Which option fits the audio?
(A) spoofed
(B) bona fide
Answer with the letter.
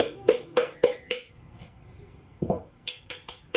A